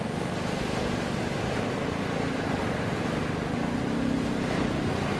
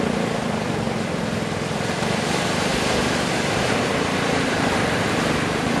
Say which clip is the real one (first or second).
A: first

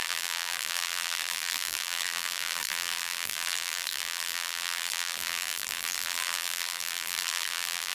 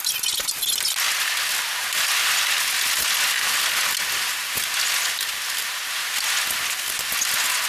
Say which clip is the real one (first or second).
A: second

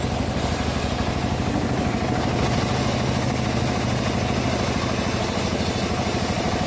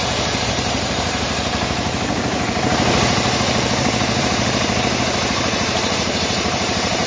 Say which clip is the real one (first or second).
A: first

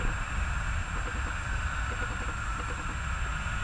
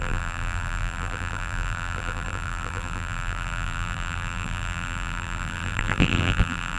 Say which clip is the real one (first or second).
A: first